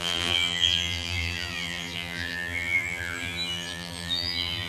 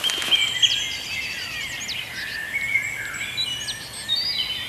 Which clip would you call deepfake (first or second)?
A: first